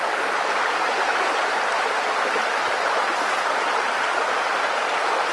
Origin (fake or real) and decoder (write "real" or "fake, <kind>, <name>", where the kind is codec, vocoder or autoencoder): real